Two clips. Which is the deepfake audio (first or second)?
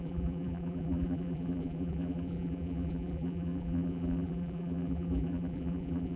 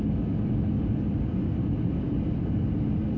first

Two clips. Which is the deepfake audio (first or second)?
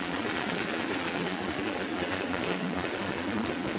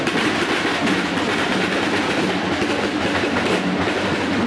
first